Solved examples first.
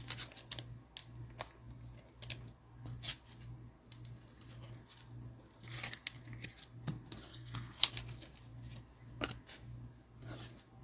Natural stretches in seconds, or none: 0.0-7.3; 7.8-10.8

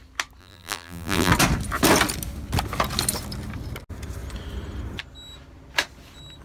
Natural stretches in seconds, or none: 0.0-0.4; 1.3-6.4

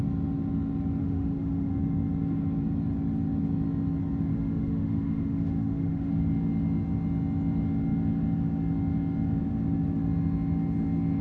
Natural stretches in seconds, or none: 0.0-1.0; 1.7-4.3; 6.1-11.2

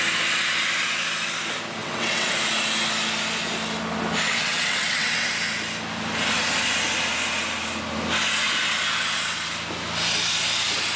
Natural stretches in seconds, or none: 0.0-1.8; 2.3-4.3; 5.3-11.0

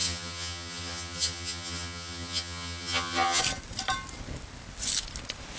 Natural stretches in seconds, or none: 3.4-5.6

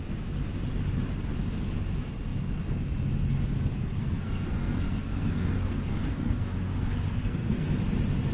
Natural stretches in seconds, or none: 0.0-4.0; 7.8-8.3

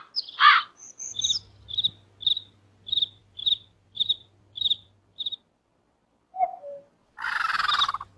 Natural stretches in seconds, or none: 0.0-0.8; 1.4-3.2; 7.1-8.2

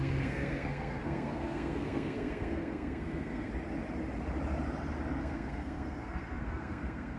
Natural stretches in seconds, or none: 3.5-5.2